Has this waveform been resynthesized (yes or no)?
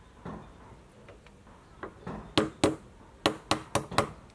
no